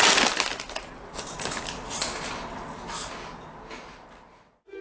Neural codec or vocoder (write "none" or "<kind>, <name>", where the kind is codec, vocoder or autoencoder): none